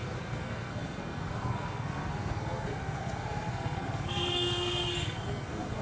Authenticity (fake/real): fake